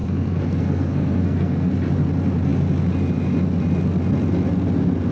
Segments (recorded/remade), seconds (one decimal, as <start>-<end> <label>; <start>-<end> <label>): 0.0-1.7 remade; 1.7-5.1 recorded